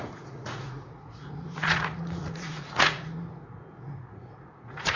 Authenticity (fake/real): fake